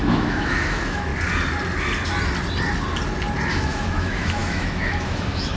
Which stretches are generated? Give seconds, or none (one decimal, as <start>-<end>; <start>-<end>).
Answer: 0.0-1.1; 3.5-5.6